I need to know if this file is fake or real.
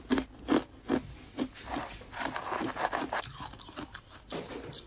real